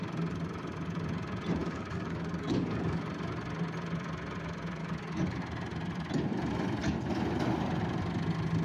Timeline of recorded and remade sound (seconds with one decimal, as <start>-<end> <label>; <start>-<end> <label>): 0.0-1.6 recorded; 1.6-3.1 remade; 3.1-4.8 recorded; 4.8-5.4 remade; 5.4-8.6 recorded